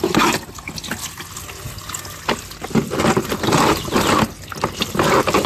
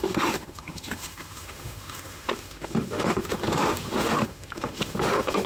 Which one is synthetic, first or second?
second